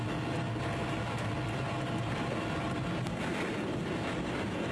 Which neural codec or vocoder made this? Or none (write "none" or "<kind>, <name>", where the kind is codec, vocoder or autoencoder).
none